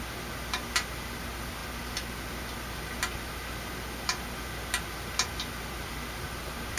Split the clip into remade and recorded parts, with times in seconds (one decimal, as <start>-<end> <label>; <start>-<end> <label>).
0.0-6.8 recorded